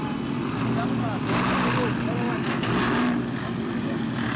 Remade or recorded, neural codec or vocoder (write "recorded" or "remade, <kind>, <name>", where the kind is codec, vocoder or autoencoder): recorded